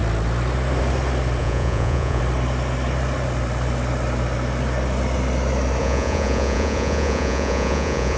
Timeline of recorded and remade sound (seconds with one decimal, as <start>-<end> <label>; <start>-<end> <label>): 0.0-1.4 recorded; 1.4-2.2 remade; 2.2-5.8 recorded; 5.8-8.2 remade